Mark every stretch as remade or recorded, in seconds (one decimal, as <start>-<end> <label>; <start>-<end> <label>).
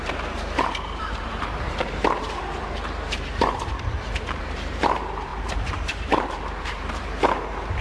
0.0-3.3 remade; 3.3-4.4 recorded; 4.4-7.8 remade